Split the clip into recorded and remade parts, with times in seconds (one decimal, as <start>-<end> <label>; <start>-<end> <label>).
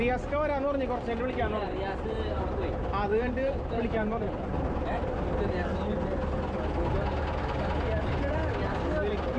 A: 0.0-3.1 recorded; 3.1-5.2 remade; 5.2-9.4 recorded